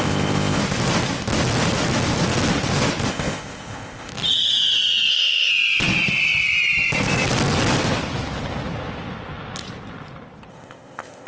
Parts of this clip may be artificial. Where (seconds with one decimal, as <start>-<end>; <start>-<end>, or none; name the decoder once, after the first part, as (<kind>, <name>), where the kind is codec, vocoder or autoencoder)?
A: 0.0-0.6 (codec, ZipCodec); 3.1-4.1; 5.1-5.5; 10.5-11.3